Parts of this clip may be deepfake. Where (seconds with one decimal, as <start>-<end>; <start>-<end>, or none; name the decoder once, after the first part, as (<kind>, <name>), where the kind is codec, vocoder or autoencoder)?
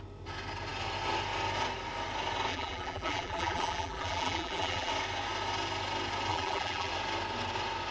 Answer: 2.5-4.9 (vocoder, BigVGAN v2); 6.3-6.9